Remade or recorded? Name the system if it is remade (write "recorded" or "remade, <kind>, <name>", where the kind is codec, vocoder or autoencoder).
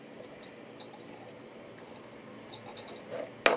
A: recorded